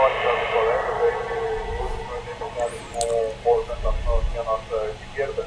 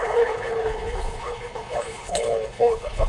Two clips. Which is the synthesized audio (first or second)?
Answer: second